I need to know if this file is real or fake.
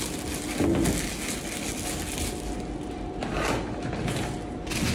real